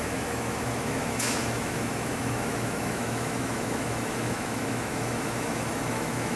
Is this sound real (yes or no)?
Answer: no